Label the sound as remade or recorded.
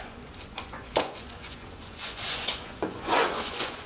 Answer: remade